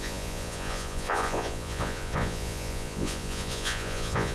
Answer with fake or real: fake